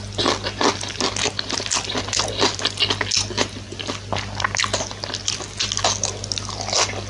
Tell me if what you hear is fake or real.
real